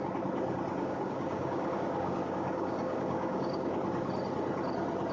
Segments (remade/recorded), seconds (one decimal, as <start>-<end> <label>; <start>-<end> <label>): 0.0-0.8 recorded; 0.8-3.7 remade; 3.7-5.1 recorded